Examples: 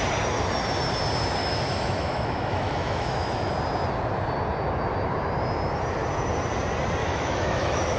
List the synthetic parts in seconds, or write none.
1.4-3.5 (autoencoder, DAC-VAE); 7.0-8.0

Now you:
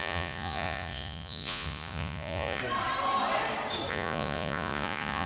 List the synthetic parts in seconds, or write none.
0.0-2.6 (vocoder, Vocos); 3.9-5.3